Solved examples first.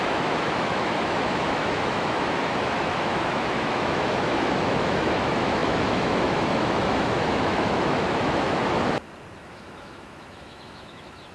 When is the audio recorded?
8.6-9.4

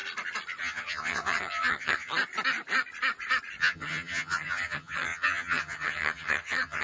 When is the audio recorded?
0.0-0.6; 2.1-3.6

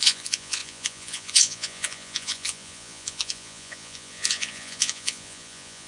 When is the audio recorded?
none